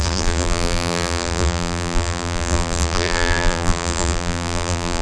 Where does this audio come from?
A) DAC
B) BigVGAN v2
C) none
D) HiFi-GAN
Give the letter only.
B